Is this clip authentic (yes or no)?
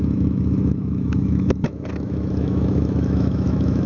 no